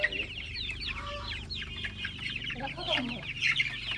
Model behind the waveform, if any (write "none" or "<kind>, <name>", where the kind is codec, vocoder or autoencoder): vocoder, BigVGAN v2